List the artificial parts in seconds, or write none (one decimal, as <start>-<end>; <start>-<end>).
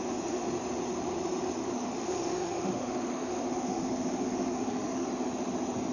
1.6-5.1